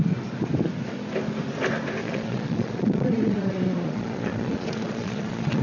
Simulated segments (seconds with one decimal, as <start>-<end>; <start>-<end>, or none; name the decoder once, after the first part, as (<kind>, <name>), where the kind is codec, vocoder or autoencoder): 2.0-5.6 (vocoder, Vocos)